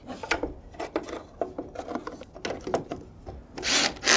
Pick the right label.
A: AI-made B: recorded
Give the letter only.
B